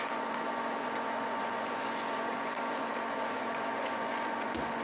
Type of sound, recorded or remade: remade